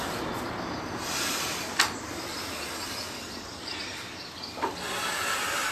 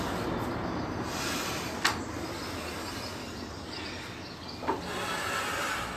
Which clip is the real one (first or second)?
second